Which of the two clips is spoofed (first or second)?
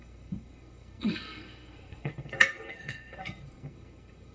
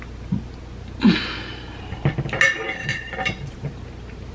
first